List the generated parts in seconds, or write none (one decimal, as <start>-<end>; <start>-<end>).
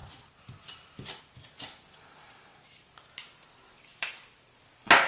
none